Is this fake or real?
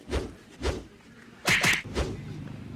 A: real